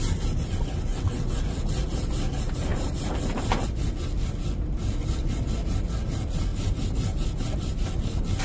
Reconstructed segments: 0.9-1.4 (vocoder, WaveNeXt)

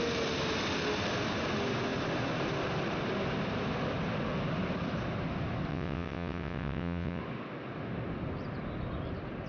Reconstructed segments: 5.7-7.2 (vocoder, WaveNeXt)

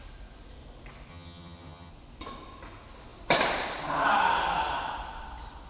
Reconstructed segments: 1.1-1.9 (vocoder, HiFi-GAN)

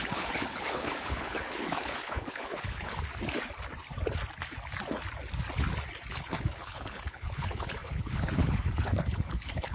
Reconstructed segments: 0.0-3.1 (codec, HILCodec); 6.1-9.7

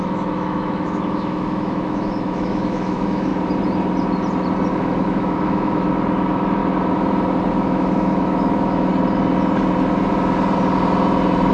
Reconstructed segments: 0.0-3.3 (autoencoder, DAC-VAE); 4.7-6.6; 7.5-8.9

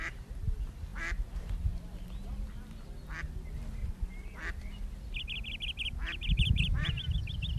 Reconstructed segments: none